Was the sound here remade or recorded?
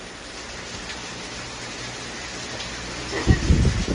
recorded